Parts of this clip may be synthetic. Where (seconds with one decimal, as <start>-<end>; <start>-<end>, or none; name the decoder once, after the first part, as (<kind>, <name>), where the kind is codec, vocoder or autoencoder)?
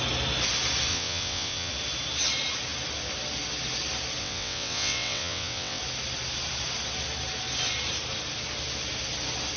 0.9-1.7 (vocoder, WaveNeXt); 4.2-5.8